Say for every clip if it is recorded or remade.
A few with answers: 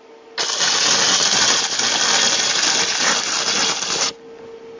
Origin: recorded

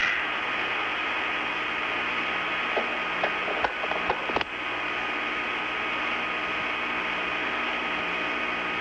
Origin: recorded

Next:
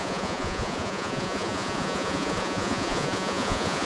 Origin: remade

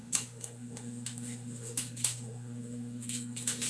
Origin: remade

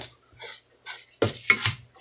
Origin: recorded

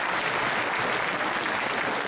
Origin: recorded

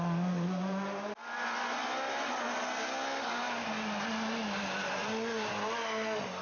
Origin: recorded